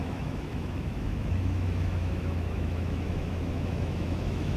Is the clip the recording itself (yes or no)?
no